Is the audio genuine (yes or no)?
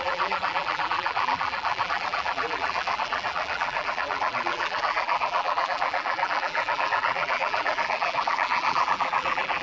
no